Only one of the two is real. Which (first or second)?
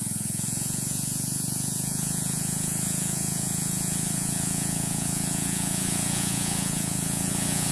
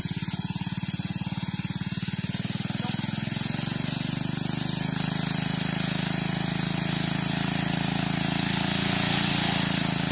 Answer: second